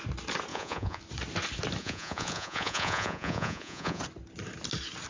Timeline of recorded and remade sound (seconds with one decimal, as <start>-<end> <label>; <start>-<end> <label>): 0.0-0.5 recorded; 0.5-1.0 remade; 1.0-1.8 recorded; 1.8-4.0 remade; 4.0-5.1 recorded